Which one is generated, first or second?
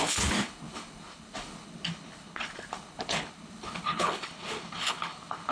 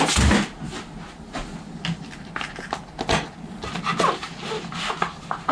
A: first